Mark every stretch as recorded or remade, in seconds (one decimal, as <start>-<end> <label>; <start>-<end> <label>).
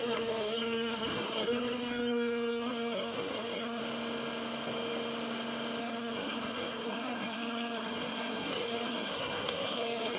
0.0-3.8 remade; 3.8-5.8 recorded; 5.8-10.2 remade